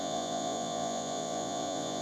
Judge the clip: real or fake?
fake